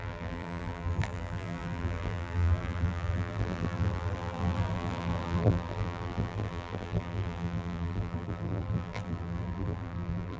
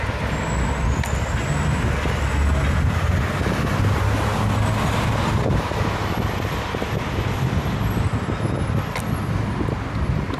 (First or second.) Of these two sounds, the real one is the second